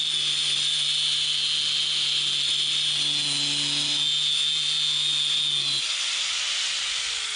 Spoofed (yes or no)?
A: no